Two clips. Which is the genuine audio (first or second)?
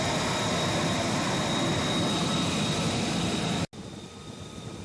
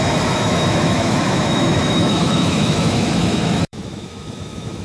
first